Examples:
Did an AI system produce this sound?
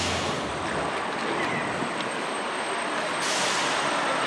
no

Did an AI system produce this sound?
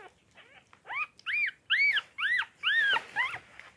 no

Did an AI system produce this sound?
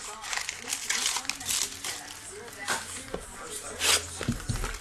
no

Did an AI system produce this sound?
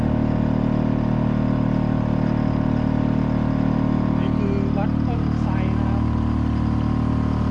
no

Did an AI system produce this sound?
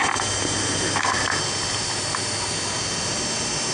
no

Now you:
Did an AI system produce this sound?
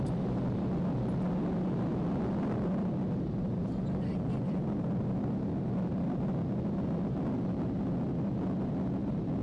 no